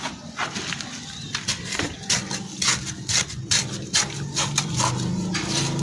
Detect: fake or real real